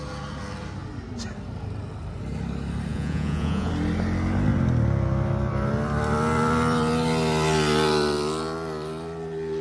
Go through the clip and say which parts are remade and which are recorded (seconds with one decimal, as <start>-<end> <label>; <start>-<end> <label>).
0.0-2.9 recorded; 2.9-3.7 remade; 3.7-9.6 recorded